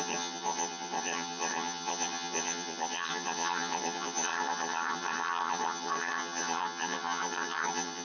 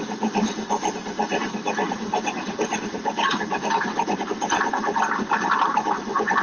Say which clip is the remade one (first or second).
first